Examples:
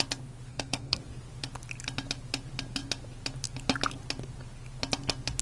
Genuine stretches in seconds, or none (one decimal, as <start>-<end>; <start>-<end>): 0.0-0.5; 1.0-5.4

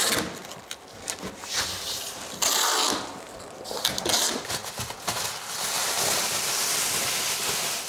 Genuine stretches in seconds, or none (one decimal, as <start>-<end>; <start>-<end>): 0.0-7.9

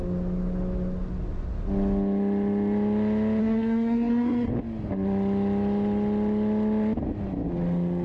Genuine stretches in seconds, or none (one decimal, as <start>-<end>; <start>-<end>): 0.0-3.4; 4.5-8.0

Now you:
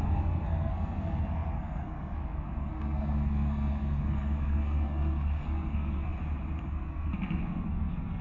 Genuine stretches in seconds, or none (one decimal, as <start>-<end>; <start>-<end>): 6.1-6.7